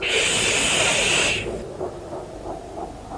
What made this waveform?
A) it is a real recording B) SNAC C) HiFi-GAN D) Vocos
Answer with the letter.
A